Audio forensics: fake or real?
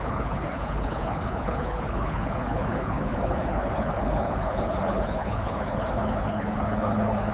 fake